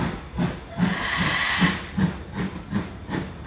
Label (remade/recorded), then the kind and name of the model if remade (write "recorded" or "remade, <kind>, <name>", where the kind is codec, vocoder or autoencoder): recorded